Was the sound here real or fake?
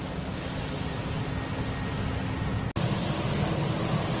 real